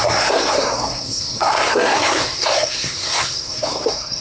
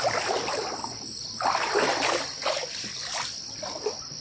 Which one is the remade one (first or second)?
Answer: first